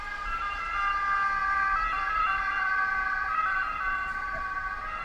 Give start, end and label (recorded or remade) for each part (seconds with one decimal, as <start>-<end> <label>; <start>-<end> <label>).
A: 0.0-1.4 recorded; 1.4-4.4 remade; 4.4-5.0 recorded